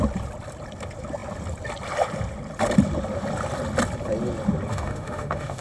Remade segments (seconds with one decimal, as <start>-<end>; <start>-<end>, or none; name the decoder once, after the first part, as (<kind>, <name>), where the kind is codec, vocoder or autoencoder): 4.7-5.6 (autoencoder, DAC-VAE)